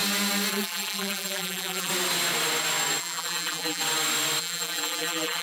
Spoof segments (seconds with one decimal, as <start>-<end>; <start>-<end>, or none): 0.5-1.9; 3.0-3.8; 4.4-5.4